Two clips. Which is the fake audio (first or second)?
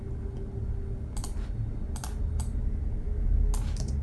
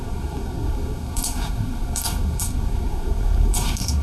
second